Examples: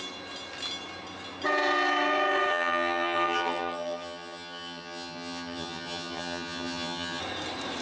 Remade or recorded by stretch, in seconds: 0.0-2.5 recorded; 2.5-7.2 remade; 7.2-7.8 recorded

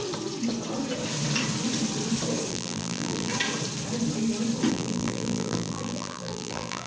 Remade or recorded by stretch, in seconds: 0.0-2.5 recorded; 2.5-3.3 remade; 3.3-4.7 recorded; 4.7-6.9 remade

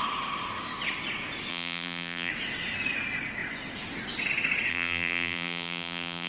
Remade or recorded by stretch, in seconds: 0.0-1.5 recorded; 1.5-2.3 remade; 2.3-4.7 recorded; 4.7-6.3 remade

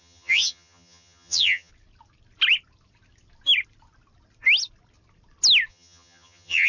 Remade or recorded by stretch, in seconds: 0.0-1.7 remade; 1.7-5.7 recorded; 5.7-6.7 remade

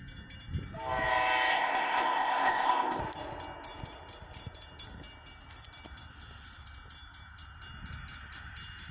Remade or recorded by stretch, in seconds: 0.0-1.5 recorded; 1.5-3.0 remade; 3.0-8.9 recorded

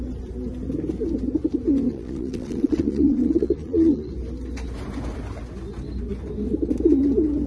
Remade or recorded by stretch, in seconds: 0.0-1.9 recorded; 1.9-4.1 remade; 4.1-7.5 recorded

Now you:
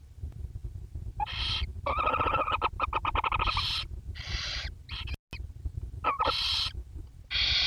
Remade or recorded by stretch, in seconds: 0.0-7.7 recorded

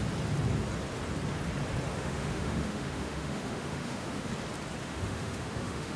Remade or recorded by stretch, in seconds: 0.0-1.9 recorded; 1.9-4.3 remade; 4.3-4.8 recorded; 4.8-6.0 remade